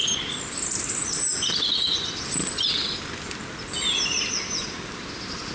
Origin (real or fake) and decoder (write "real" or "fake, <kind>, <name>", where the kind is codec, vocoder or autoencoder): real